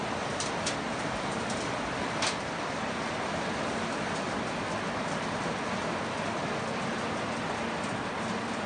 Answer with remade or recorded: recorded